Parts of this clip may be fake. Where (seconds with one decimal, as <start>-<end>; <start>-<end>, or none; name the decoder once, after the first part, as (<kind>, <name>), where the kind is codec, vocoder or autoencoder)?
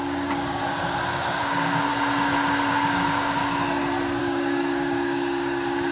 0.0-0.6 (codec, DAC); 1.4-1.9; 2.7-3.4; 4.2-5.9